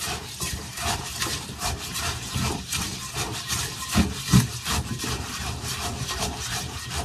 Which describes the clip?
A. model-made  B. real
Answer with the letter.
A